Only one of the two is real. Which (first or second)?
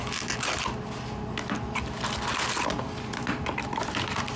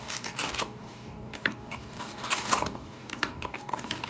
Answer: first